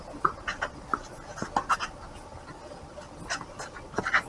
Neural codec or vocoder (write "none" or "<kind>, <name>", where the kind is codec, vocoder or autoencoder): none